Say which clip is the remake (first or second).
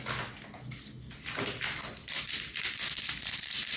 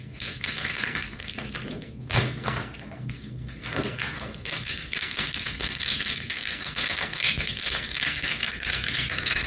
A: second